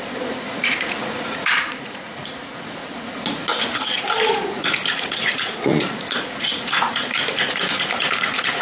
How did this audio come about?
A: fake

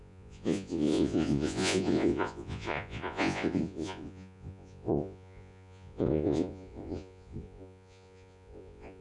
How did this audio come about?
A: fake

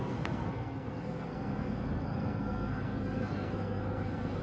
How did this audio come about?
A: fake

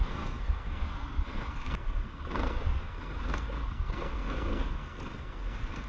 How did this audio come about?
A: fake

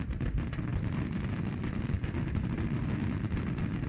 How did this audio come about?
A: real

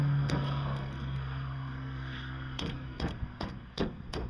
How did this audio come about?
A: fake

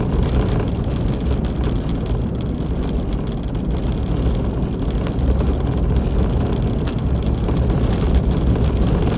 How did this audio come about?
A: real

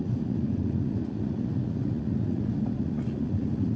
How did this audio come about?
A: fake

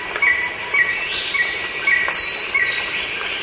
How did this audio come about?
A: real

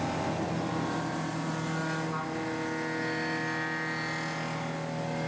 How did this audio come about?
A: real